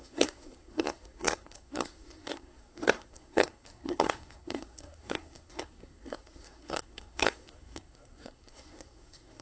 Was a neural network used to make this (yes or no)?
yes